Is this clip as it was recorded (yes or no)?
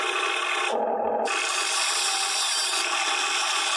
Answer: yes